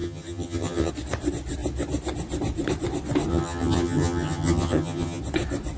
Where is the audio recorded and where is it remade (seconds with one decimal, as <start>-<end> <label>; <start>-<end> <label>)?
0.0-0.9 remade; 0.9-3.3 recorded; 3.3-5.2 remade; 5.2-5.8 recorded